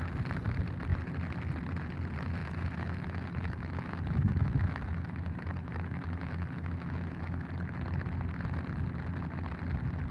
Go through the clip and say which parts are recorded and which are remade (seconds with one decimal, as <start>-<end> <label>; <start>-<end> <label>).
0.0-2.4 recorded; 2.4-7.5 remade; 7.5-10.1 recorded